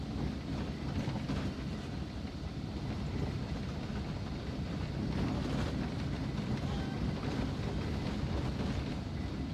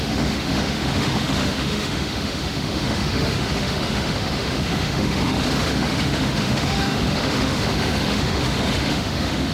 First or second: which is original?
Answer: first